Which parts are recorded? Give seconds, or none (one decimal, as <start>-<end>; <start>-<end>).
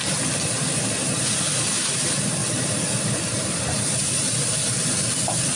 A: 0.0-5.6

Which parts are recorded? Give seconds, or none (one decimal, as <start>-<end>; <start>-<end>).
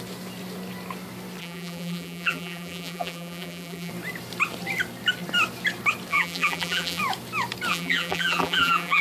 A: 0.0-1.4; 3.9-6.1; 7.0-7.7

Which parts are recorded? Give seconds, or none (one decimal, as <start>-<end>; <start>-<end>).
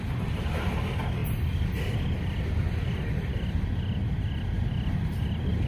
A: 0.0-5.7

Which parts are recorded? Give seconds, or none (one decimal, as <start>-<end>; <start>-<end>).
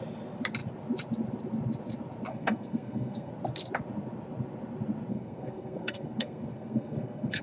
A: 0.0-2.3; 3.3-5.1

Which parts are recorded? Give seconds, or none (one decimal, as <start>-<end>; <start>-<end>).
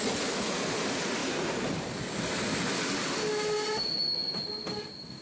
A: 0.0-5.2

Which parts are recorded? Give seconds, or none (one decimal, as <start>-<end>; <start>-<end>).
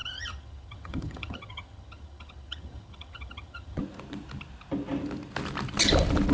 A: 3.8-6.3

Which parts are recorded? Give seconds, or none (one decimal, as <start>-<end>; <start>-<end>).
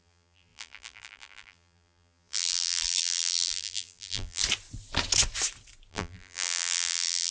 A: 4.4-5.9